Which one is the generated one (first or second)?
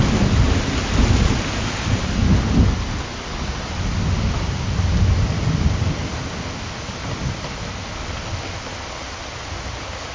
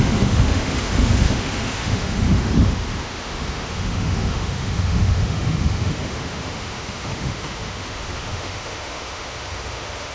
second